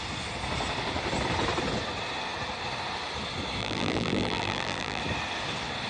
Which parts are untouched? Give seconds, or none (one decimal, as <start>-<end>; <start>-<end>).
0.0-3.6; 5.0-5.9